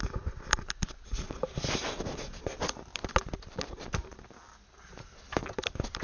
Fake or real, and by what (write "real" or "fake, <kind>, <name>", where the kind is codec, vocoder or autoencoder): real